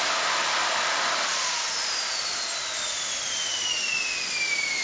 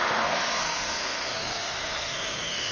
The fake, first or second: second